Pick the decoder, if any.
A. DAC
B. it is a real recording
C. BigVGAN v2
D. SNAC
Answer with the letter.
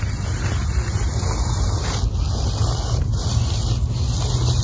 B